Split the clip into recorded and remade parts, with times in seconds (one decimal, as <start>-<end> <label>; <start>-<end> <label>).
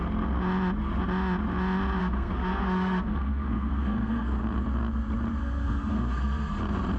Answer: 0.0-2.0 recorded; 2.0-4.4 remade; 4.4-5.4 recorded; 5.4-6.6 remade; 6.6-7.0 recorded